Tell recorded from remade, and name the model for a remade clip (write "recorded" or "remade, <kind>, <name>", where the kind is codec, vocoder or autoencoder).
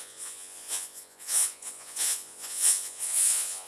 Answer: remade, vocoder, Vocos